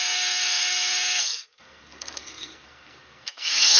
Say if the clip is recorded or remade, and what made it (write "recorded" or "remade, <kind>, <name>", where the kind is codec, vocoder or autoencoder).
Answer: remade, codec, SNAC